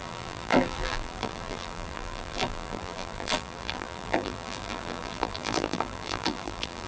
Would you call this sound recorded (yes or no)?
no